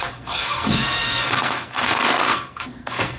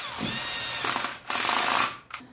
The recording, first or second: second